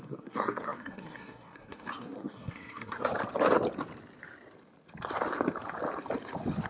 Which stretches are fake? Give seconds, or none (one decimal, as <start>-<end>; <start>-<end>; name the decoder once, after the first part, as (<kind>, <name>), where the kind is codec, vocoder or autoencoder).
0.0-3.1 (codec, SNAC)